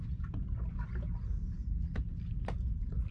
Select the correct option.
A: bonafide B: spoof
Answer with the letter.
A